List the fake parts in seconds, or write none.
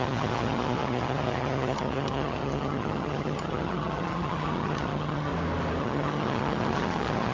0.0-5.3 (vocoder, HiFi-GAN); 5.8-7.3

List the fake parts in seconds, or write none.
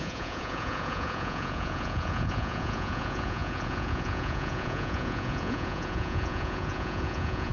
0.0-7.5 (vocoder, Vocos)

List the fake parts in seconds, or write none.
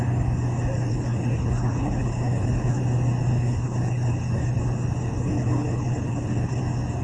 0.9-2.8 (codec, HILCodec); 3.3-4.6; 5.1-6.6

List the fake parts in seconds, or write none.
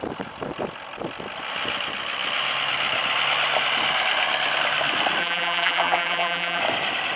5.2-6.6 (vocoder, BigVGAN v2)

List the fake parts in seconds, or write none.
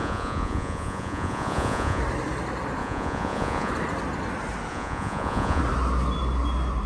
0.0-2.0 (vocoder, Vocos); 2.8-3.7; 4.7-5.6